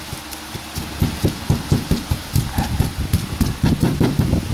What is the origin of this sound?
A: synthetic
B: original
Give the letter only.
B